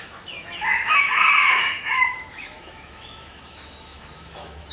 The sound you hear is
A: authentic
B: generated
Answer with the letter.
B